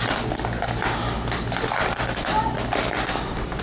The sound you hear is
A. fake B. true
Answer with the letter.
B